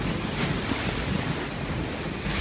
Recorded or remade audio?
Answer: recorded